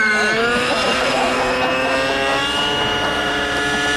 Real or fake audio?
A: real